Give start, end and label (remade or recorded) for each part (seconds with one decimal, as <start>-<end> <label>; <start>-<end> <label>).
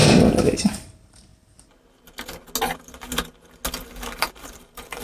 0.0-0.6 recorded; 0.6-1.3 remade; 1.3-4.3 recorded; 4.3-5.0 remade